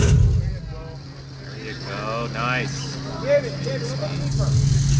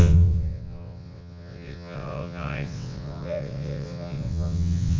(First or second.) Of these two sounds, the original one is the first